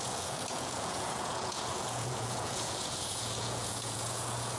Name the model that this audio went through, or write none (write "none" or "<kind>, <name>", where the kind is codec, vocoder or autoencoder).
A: vocoder, Vocos